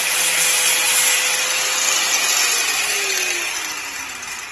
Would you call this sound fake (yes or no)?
no